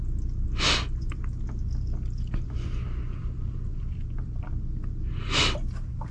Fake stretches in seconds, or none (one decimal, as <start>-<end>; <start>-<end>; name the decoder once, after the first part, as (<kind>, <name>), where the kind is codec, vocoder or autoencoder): none